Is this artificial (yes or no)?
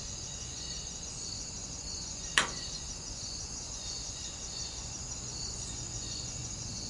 yes